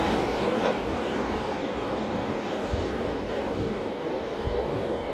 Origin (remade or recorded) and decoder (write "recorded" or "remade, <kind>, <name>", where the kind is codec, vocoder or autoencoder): remade, codec, DAC